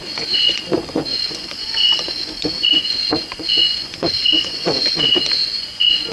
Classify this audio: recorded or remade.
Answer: remade